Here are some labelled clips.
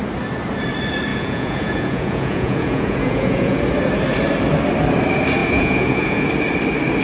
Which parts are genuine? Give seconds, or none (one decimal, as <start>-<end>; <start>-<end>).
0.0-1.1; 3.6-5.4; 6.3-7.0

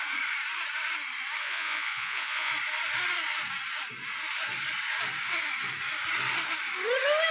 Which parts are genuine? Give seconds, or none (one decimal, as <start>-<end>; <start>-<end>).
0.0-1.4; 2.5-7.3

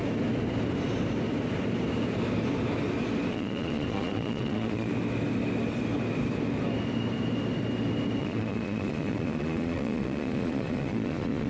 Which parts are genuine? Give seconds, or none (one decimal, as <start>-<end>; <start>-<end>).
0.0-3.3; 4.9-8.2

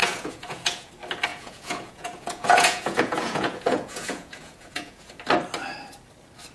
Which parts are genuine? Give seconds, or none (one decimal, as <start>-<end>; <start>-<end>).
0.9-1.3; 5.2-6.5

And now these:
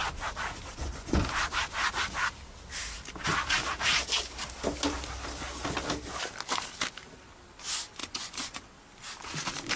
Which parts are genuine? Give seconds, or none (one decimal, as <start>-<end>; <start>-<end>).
0.0-0.8; 1.4-8.0; 8.7-9.8

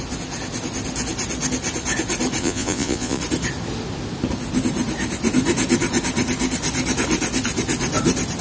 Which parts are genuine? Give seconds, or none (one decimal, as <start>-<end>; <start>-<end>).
0.0-2.4; 3.2-8.4

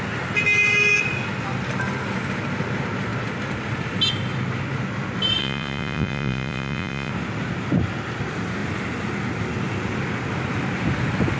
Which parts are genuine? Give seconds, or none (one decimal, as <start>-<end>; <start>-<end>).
0.0-5.4; 7.1-11.4